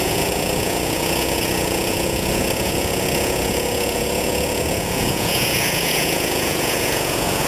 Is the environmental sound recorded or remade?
remade